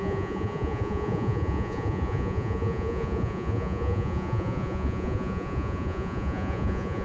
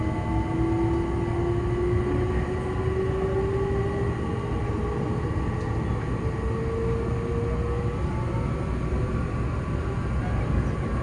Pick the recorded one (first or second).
second